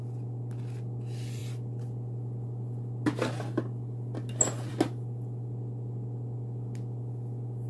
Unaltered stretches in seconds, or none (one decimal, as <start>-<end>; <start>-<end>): 0.0-7.7